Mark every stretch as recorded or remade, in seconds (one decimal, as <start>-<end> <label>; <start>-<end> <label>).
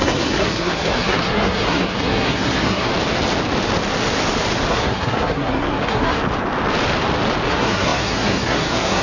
0.0-2.9 remade; 2.9-4.7 recorded; 4.7-6.2 remade; 6.2-7.5 recorded; 7.5-9.0 remade